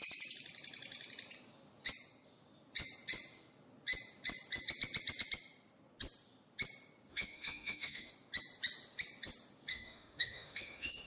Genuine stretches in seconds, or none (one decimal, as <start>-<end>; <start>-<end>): 0.0-7.1; 8.1-9.7